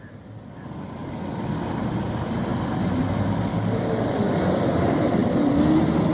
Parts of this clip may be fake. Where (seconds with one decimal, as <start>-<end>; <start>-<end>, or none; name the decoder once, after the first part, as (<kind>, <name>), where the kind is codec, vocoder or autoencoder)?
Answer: none